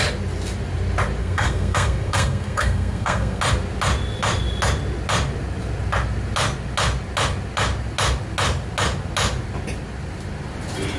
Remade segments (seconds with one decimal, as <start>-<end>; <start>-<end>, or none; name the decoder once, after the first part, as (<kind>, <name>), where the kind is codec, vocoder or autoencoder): 1.2-3.4 (codec, SNAC)